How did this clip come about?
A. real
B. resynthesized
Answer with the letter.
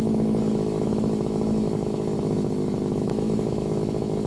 B